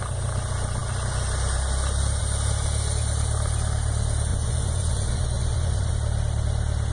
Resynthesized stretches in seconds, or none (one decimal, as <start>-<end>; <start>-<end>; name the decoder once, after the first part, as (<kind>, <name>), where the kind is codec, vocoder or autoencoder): 4.3-5.9 (vocoder, Vocos)